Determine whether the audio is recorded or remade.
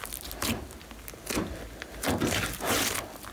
recorded